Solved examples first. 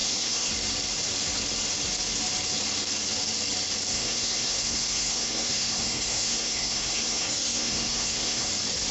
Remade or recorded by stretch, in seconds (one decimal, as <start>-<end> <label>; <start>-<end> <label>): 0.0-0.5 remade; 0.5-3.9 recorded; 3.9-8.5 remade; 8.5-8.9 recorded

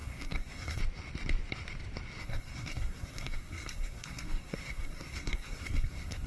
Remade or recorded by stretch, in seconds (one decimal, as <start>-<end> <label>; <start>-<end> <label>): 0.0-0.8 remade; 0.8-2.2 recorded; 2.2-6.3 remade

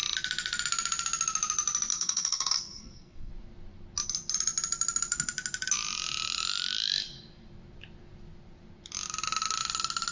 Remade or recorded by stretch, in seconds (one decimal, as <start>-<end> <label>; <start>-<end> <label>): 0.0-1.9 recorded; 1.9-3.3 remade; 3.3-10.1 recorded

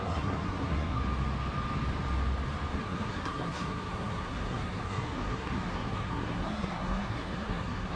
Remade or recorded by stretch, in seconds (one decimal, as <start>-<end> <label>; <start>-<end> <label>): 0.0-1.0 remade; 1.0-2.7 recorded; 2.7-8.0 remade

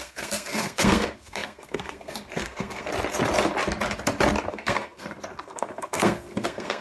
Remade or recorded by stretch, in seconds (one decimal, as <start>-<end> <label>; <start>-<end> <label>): 0.0-2.9 remade; 2.9-4.5 recorded; 4.5-6.8 remade

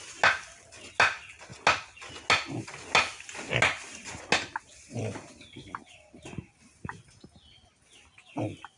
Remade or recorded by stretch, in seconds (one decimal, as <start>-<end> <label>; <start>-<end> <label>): 0.0-8.8 recorded

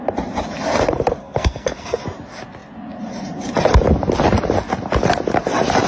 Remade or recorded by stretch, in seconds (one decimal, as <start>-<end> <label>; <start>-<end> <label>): 0.0-1.2 recorded; 1.2-2.0 remade; 2.0-5.9 recorded